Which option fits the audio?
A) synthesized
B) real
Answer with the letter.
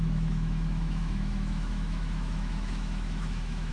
A